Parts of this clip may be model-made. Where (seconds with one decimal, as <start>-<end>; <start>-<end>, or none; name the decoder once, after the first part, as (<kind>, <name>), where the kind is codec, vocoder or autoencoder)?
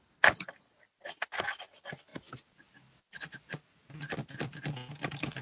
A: none